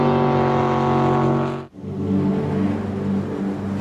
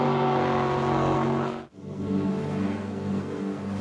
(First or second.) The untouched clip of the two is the first